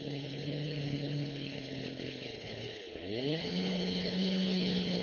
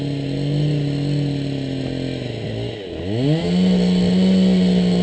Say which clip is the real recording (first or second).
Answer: second